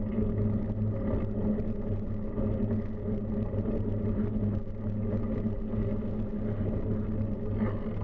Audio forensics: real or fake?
real